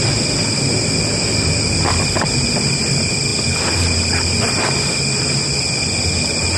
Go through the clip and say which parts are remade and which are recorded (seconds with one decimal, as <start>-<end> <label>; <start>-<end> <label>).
0.0-6.6 recorded